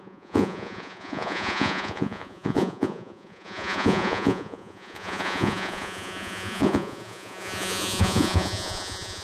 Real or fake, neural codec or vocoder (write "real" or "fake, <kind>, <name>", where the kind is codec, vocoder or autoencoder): fake, vocoder, Vocos